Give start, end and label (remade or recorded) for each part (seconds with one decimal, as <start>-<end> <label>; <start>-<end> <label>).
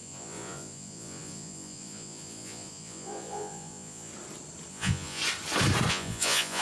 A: 0.0-4.1 remade; 4.1-4.7 recorded; 4.7-5.2 remade; 5.2-5.9 recorded; 5.9-6.6 remade